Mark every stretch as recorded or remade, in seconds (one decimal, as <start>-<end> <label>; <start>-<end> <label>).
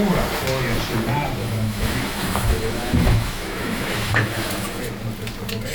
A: 0.0-1.4 recorded; 1.4-4.8 remade; 4.8-5.7 recorded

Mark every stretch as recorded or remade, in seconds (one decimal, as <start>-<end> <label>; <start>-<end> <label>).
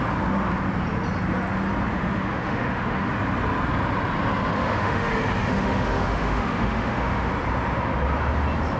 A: 0.0-1.9 recorded; 1.9-3.1 remade; 3.1-4.5 recorded; 4.5-5.1 remade; 5.1-5.5 recorded; 5.5-7.3 remade; 7.3-8.8 recorded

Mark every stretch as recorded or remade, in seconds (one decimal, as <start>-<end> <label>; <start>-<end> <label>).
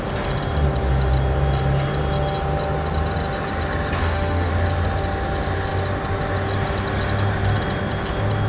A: 0.0-4.0 recorded; 4.0-4.5 remade; 4.5-8.5 recorded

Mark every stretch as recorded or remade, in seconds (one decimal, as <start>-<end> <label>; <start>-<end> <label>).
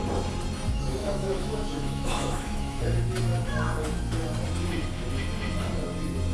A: 0.0-1.0 recorded; 1.0-2.8 remade; 2.8-6.3 recorded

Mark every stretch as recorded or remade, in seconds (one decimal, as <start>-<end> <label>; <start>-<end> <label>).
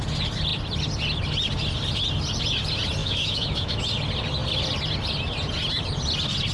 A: 0.0-3.0 recorded; 3.0-3.8 remade; 3.8-6.5 recorded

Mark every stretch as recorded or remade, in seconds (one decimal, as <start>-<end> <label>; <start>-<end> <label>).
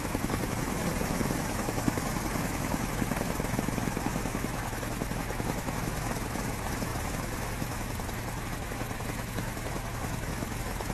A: 0.0-10.9 remade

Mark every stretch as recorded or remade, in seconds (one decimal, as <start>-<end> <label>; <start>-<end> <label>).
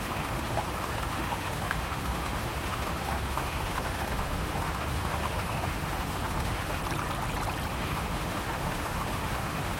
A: 0.0-6.8 remade; 6.8-7.7 recorded; 7.7-9.8 remade